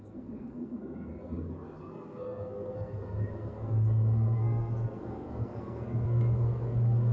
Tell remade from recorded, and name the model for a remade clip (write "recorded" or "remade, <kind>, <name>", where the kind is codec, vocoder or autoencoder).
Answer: remade, codec, SNAC